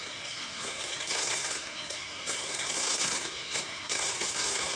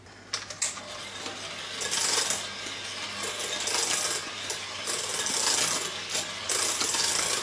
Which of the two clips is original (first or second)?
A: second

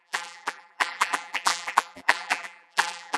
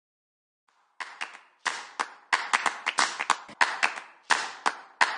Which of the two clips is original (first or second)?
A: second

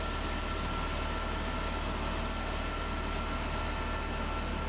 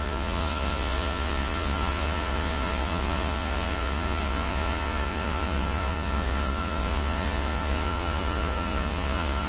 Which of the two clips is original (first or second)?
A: first